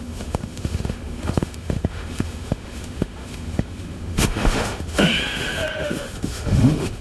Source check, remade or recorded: remade